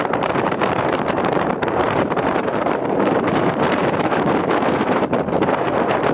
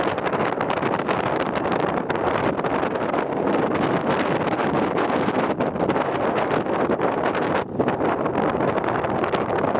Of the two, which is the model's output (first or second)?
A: first